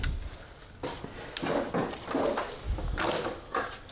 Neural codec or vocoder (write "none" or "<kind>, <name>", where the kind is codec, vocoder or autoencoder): none